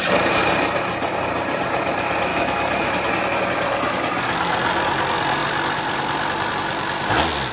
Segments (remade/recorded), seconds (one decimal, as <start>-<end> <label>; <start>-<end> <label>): 0.0-2.3 recorded; 2.3-3.1 remade; 3.1-7.5 recorded